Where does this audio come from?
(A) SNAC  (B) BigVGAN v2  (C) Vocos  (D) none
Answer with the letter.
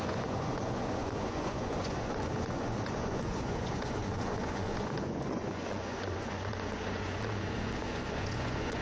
C